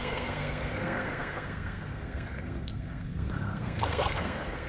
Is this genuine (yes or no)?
no